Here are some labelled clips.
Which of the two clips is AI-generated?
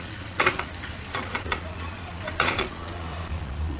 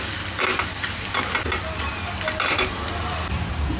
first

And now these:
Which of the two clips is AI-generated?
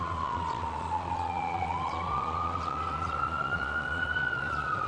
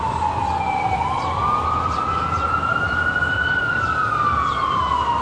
first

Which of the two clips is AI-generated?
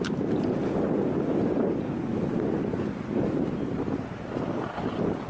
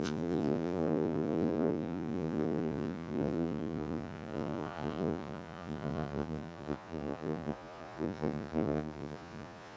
second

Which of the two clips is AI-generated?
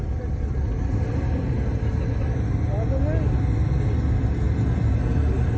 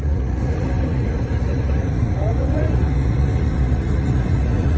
second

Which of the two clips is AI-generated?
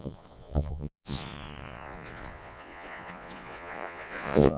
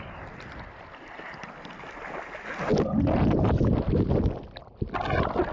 first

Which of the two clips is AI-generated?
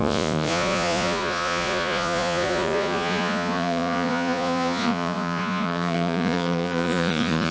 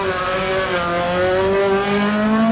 first